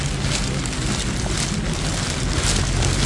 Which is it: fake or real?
real